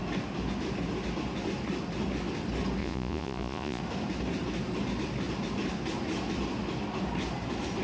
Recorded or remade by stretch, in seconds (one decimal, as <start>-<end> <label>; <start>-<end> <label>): 0.0-2.8 recorded; 2.8-3.8 remade; 3.8-7.8 recorded